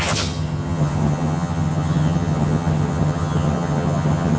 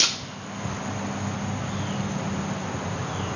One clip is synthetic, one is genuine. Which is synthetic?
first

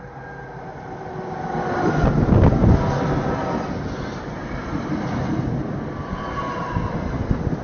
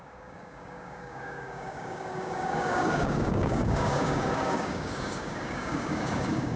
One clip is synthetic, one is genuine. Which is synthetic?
second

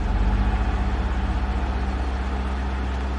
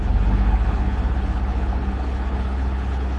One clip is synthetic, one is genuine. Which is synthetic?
second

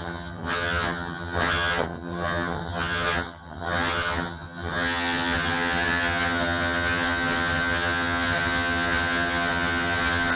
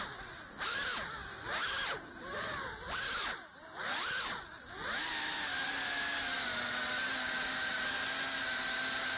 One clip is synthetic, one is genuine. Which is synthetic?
first